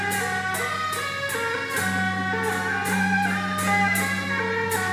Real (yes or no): yes